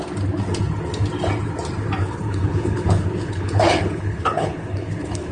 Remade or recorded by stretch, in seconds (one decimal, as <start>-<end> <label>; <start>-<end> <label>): 0.0-2.0 recorded; 2.0-5.3 remade

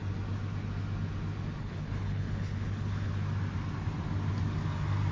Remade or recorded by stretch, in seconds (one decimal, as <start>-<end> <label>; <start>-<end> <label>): 0.0-1.6 recorded; 1.6-3.1 remade; 3.1-5.1 recorded